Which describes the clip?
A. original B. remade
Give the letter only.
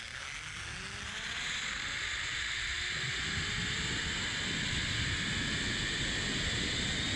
A